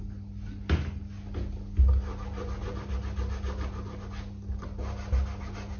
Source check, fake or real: real